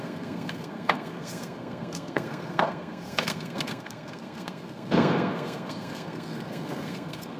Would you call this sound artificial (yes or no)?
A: yes